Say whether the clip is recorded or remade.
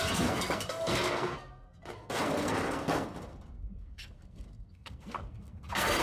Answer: remade